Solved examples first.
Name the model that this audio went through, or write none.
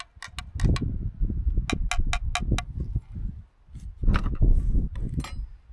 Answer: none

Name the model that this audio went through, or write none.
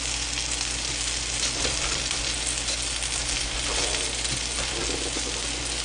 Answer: none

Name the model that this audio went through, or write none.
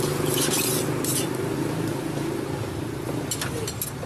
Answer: none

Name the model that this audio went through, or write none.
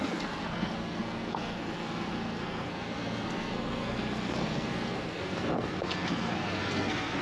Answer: codec, SNAC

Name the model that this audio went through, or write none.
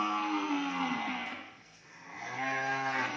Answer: codec, SNAC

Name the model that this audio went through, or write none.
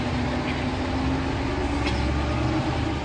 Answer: none